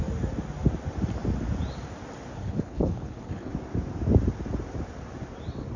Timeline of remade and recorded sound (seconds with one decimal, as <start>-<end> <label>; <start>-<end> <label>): 0.0-2.4 recorded; 2.4-3.5 remade; 3.5-5.8 recorded